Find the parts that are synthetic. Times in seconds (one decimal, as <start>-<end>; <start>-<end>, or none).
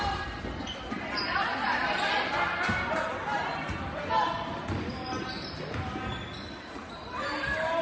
none